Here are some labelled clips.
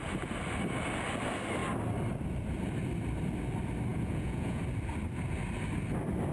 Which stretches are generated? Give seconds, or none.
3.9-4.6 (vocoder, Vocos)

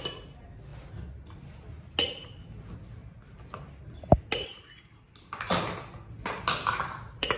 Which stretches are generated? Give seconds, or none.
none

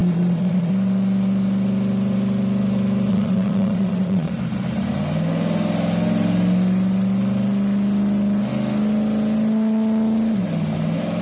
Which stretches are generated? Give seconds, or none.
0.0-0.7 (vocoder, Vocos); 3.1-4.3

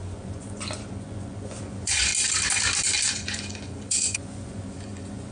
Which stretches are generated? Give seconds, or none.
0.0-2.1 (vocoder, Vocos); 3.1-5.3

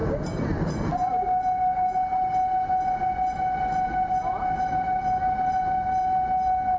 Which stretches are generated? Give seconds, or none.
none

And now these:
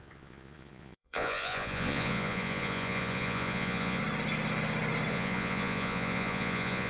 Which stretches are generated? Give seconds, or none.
0.0-4.0 (vocoder, Vocos); 5.1-6.9

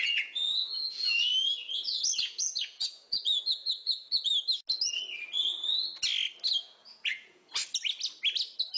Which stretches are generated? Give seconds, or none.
0.0-1.3 (vocoder, Vocos); 2.2-4.3; 6.6-7.5